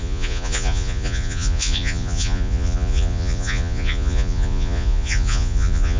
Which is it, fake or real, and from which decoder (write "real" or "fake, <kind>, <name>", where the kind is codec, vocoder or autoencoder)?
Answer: fake, vocoder, Vocos